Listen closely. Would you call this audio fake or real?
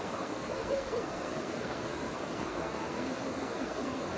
fake